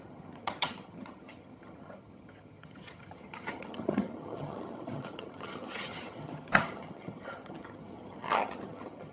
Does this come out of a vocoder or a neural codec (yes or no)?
yes